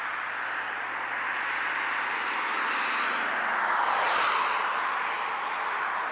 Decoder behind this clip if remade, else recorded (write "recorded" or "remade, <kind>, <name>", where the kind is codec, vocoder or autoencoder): recorded